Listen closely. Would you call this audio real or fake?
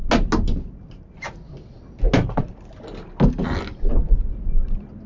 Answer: real